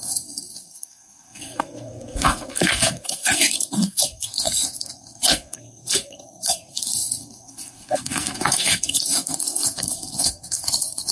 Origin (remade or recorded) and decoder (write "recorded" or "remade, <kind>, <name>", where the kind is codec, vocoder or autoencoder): remade, codec, SNAC